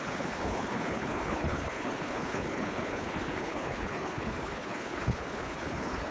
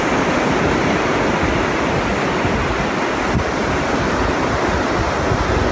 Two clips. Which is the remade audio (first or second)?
first